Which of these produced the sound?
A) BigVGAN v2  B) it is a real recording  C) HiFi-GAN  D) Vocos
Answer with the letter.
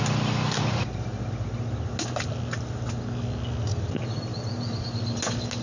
B